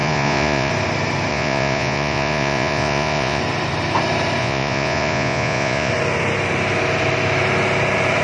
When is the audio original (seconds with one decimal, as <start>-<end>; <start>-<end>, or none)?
0.7-1.3; 3.4-4.4; 5.9-8.2